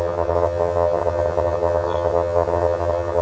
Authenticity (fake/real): fake